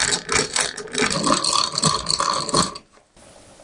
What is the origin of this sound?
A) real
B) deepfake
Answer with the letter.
A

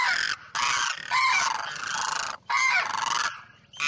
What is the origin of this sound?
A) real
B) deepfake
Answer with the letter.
A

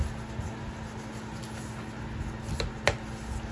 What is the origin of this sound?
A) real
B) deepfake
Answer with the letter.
A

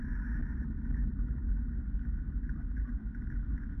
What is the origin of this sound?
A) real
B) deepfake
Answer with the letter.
A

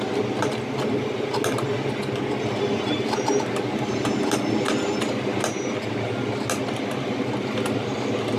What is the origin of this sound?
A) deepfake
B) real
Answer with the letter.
B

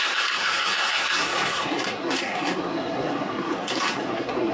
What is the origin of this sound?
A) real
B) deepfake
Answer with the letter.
B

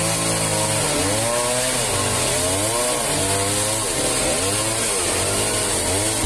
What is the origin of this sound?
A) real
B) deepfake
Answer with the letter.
A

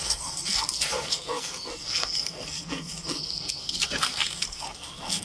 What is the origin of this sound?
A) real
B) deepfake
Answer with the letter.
B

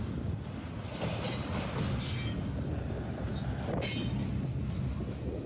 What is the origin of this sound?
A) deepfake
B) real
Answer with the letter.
B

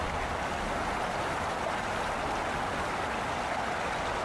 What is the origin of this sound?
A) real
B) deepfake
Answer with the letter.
A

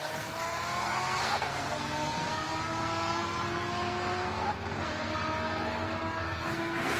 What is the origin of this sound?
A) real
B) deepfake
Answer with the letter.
B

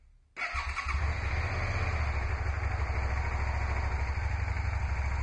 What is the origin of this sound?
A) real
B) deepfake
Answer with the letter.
A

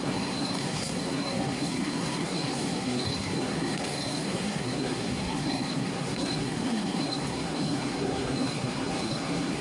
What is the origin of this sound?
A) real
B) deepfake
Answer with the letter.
B